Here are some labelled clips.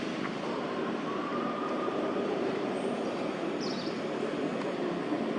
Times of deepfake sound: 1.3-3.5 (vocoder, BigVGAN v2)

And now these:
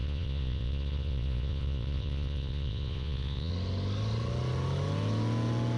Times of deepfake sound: 0.0-3.5 (vocoder, Vocos)

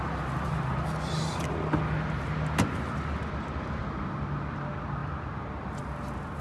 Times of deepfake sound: 5.0-5.8 (vocoder, BigVGAN v2)

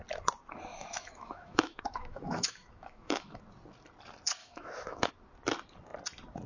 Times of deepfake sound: 0.7-3.4 (autoencoder, DAC-VAE); 4.4-5.1

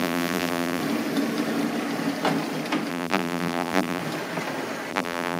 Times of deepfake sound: 0.0-0.8 (vocoder, BigVGAN v2); 2.9-4.0; 4.9-5.4

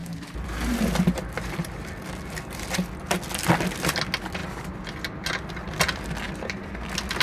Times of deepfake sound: 0.0-0.8 (vocoder, BigVGAN v2)

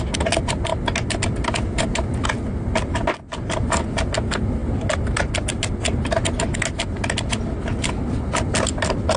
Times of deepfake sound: none